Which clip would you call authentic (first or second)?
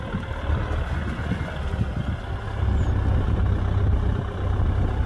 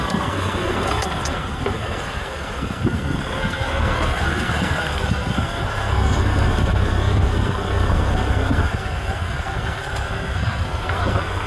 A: first